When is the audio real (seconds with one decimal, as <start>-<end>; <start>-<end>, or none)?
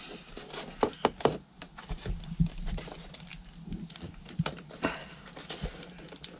0.0-6.4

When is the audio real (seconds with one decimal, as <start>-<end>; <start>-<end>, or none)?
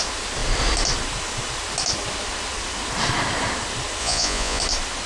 0.0-4.0; 4.6-5.1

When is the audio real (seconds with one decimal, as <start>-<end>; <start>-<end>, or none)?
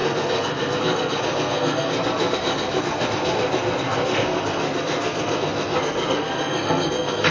none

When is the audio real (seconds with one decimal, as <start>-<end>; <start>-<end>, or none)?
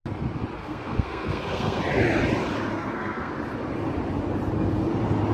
0.0-0.6; 1.8-2.7; 3.3-5.3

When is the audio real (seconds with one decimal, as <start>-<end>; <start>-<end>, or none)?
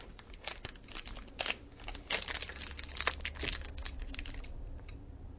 1.2-3.9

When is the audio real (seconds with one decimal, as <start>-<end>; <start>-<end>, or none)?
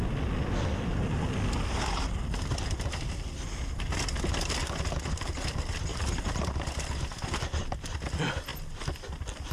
0.0-5.9; 6.5-9.5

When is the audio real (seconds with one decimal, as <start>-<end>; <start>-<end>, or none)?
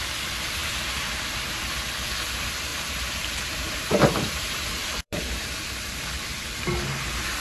0.0-0.6; 1.6-2.7; 6.4-7.4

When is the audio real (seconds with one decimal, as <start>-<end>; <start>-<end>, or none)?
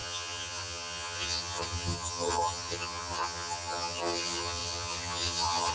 none